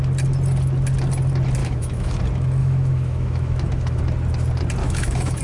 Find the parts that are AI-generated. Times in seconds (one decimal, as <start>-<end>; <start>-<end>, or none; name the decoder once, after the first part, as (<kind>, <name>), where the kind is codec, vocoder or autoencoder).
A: 1.6-2.2 (autoencoder, DAC-VAE); 2.6-4.0; 4.8-5.4